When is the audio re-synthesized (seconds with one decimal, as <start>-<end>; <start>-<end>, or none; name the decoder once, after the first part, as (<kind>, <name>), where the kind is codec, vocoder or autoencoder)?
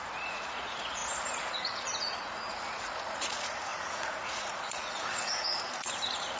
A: 0.0-1.0 (vocoder, Vocos); 1.5-6.4